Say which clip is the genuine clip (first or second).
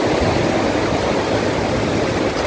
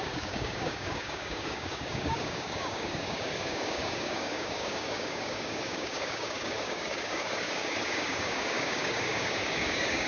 first